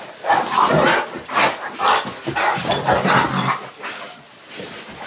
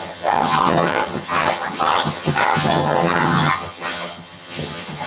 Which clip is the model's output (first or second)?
second